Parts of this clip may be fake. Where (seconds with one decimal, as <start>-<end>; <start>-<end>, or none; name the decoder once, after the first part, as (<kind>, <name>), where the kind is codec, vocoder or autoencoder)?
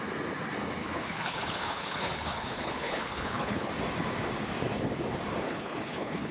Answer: 0.8-3.7 (codec, HILCodec); 5.5-6.3